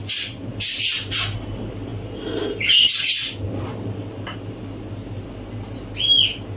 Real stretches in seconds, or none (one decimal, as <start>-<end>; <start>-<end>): 0.0-0.5; 1.1-1.9; 5.9-6.6